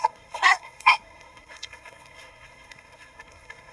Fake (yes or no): yes